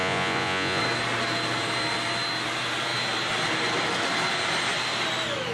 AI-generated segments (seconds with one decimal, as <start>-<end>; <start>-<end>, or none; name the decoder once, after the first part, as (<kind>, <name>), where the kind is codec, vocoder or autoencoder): 0.0-0.8 (vocoder, Vocos)